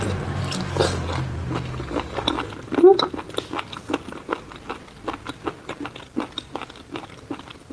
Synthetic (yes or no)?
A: no